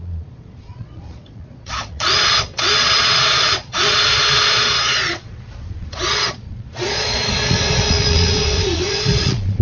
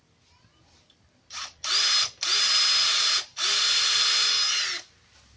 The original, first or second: second